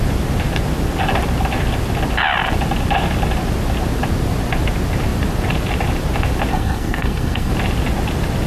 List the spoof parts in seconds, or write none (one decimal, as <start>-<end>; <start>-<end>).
6.5-7.5